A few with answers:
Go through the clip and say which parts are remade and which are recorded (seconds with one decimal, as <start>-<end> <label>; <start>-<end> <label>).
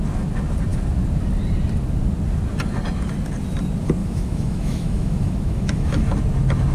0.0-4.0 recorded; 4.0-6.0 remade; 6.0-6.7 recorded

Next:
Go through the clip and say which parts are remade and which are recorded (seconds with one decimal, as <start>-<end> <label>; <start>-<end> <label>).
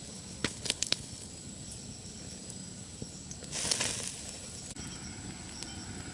0.0-0.4 recorded; 0.4-1.3 remade; 1.3-6.1 recorded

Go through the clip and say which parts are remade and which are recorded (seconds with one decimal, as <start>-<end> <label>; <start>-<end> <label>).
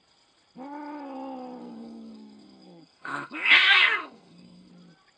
0.0-1.6 recorded; 1.6-4.7 remade; 4.7-5.2 recorded